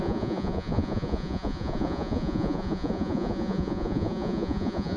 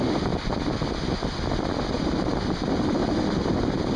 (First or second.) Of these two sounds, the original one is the second